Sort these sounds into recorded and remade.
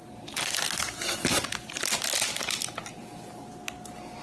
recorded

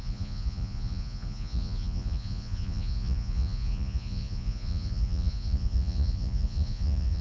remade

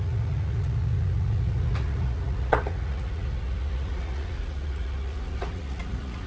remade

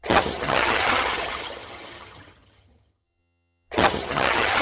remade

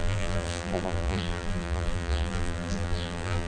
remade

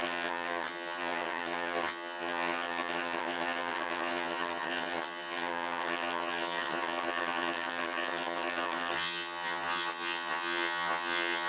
remade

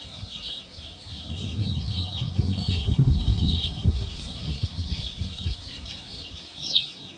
remade